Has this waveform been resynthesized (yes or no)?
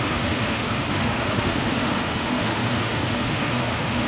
yes